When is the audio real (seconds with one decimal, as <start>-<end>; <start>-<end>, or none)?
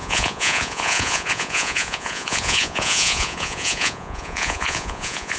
none